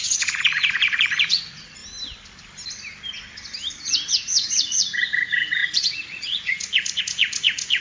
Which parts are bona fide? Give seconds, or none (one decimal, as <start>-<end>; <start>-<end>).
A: 1.8-4.1